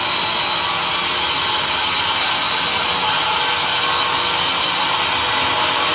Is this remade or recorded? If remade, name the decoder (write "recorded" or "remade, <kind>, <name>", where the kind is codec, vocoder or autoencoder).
recorded